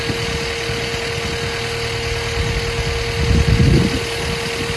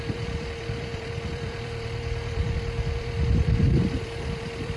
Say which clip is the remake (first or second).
second